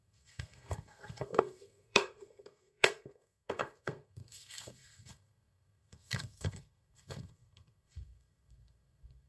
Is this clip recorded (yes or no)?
no